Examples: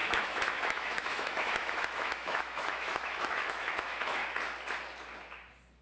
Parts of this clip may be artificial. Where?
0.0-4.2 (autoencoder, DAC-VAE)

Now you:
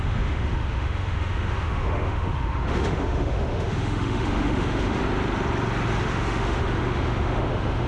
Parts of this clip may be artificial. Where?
0.0-5.0 (autoencoder, DAC-VAE); 6.0-7.9

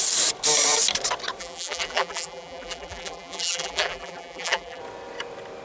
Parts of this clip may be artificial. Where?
1.4-4.8 (vocoder, BigVGAN v2)